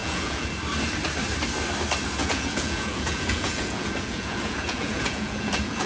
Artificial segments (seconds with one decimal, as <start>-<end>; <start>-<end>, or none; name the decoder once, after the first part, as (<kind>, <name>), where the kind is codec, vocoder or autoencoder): 0.0-0.5 (vocoder, Vocos); 2.2-5.9